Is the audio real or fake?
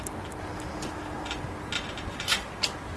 real